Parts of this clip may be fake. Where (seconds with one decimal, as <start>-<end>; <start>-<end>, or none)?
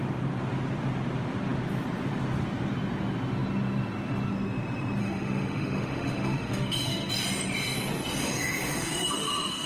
5.0-7.1; 8.2-9.7